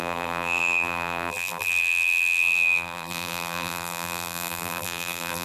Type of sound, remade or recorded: remade